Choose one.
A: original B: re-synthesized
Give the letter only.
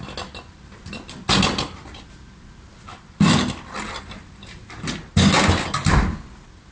A